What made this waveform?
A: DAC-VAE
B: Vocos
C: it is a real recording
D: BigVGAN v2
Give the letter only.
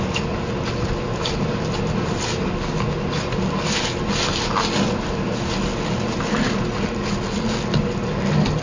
C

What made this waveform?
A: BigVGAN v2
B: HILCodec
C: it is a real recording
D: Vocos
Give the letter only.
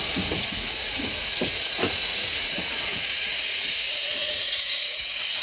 D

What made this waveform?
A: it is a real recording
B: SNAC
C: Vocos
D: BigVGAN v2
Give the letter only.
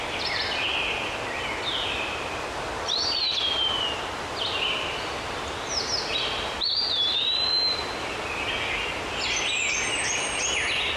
A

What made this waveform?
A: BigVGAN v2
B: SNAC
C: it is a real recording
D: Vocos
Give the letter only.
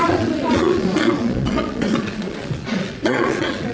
D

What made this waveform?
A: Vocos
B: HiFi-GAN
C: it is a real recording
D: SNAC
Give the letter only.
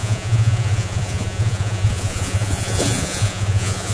A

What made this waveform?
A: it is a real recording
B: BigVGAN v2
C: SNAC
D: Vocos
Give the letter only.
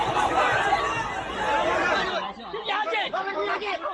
A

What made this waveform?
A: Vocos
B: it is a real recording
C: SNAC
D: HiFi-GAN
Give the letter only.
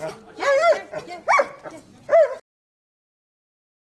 B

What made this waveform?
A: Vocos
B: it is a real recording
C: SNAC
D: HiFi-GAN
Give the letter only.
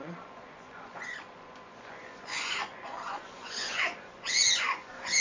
A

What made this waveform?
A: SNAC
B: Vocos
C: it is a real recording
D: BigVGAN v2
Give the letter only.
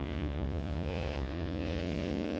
B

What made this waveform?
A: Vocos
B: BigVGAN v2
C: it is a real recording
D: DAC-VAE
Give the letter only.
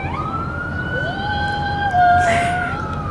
C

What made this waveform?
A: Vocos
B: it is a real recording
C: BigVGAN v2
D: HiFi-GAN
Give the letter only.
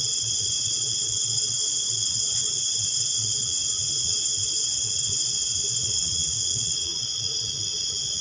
A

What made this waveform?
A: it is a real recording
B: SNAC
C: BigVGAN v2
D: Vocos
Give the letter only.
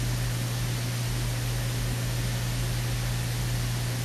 A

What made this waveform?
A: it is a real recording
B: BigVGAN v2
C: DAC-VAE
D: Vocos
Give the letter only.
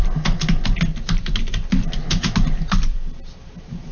A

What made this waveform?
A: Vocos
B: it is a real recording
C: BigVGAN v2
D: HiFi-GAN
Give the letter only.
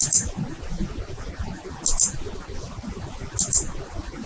B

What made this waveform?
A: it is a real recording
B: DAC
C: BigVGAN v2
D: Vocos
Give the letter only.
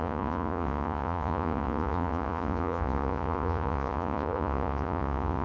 D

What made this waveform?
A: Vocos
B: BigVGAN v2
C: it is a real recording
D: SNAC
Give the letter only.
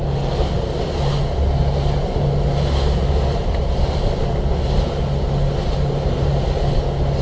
C